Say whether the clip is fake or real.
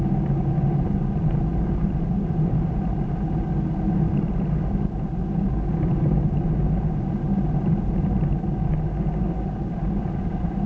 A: real